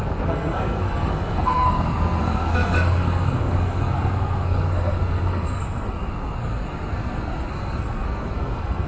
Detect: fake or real fake